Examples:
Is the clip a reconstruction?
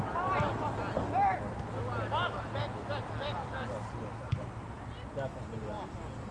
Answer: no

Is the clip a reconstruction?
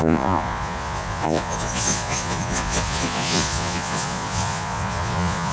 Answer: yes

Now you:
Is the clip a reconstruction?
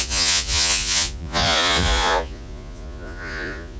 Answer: yes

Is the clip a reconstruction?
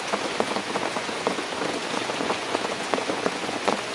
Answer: yes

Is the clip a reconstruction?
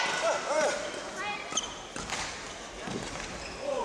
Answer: no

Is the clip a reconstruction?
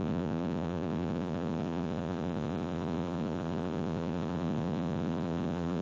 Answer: yes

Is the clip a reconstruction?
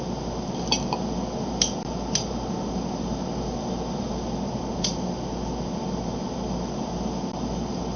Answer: no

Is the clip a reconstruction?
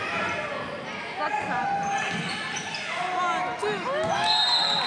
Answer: no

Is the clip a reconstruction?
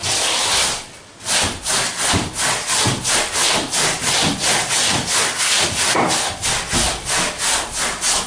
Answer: no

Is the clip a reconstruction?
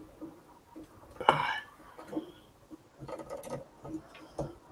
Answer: no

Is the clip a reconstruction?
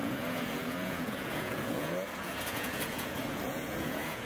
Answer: yes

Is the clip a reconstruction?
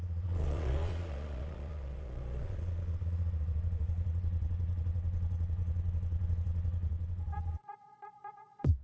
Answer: yes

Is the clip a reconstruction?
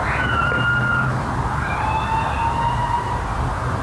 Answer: no